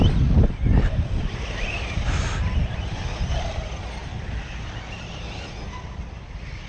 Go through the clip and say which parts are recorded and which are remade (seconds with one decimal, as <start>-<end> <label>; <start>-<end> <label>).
0.0-6.7 recorded